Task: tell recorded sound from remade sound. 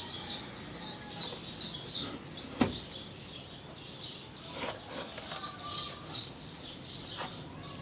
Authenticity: recorded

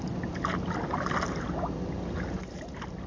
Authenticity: recorded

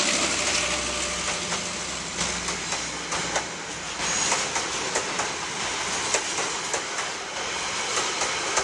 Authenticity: recorded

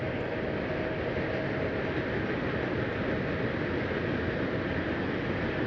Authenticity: recorded